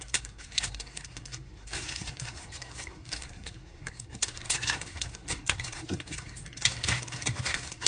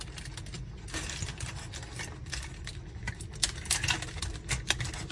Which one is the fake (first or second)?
first